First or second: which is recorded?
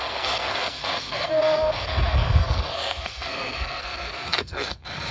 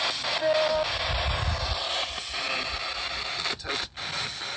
second